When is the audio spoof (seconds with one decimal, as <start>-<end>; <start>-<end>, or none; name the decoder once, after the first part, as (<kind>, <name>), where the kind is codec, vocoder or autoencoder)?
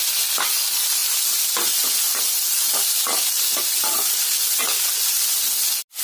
none